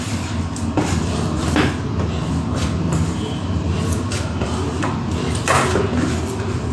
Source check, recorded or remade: remade